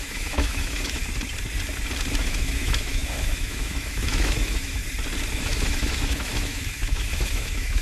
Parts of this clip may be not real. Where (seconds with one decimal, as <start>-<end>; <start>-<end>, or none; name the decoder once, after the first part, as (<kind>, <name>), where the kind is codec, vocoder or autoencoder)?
0.0-1.0 (autoencoder, DAC-VAE); 2.2-4.8; 5.3-7.8